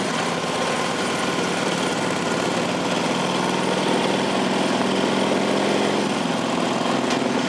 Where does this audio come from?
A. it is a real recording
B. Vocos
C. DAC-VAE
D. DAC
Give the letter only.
A